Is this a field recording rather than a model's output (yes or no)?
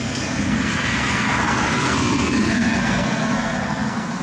no